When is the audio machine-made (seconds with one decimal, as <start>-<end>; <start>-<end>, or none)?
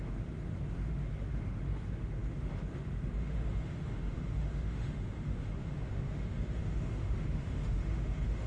0.0-8.5